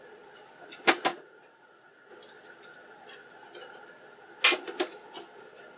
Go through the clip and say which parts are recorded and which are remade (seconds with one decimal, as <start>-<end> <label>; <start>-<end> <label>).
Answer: 0.0-1.1 recorded; 1.1-2.1 remade; 2.1-5.8 recorded